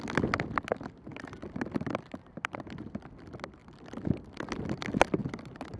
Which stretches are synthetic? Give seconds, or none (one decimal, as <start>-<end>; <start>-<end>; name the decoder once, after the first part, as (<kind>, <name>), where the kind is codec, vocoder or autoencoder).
1.1-3.1 (vocoder, BigVGAN v2); 3.6-4.5; 5.2-5.8